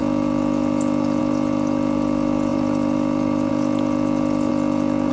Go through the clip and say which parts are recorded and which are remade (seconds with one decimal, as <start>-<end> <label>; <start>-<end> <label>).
0.0-2.5 recorded; 2.5-3.5 remade; 3.5-5.1 recorded